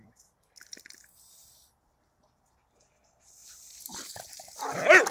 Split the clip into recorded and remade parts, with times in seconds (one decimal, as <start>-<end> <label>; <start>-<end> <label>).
0.0-5.1 recorded